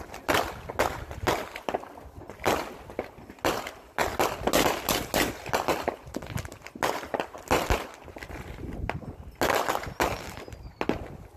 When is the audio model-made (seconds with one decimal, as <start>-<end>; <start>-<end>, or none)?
none